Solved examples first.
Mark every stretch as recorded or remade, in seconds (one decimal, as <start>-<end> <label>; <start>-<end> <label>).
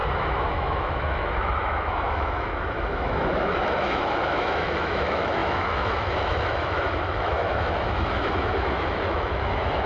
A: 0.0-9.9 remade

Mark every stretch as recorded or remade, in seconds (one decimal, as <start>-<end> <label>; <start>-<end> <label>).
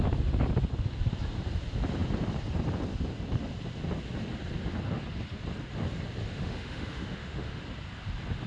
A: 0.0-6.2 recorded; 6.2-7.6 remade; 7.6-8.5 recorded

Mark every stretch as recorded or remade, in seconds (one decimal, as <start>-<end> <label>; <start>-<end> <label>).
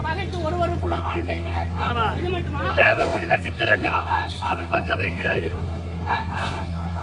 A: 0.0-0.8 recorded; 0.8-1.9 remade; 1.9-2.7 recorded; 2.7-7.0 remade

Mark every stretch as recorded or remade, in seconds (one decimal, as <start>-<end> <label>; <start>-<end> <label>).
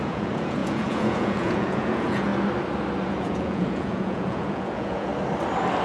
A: 0.0-2.3 remade; 2.3-3.1 recorded; 3.1-5.1 remade; 5.1-5.8 recorded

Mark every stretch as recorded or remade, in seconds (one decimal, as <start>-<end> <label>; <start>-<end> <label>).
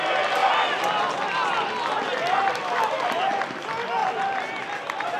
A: 0.0-5.2 recorded